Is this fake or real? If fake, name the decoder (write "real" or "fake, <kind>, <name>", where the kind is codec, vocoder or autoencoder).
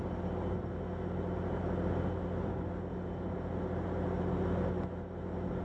real